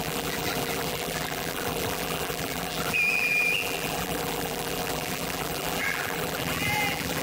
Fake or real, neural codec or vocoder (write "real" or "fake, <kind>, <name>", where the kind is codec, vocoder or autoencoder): fake, vocoder, BigVGAN v2